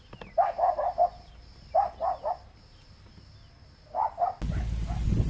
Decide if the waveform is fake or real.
real